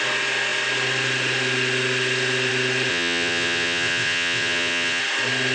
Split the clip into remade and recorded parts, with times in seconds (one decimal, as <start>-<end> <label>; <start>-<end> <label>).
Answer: 0.0-2.9 recorded; 2.9-5.0 remade; 5.0-5.5 recorded